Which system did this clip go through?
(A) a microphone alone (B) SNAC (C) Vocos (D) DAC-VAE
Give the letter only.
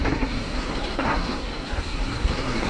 B